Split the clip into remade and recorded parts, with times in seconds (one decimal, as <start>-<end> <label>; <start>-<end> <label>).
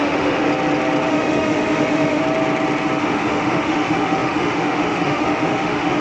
0.0-0.5 remade; 0.5-1.1 recorded; 1.1-2.2 remade; 2.2-3.0 recorded; 3.0-6.0 remade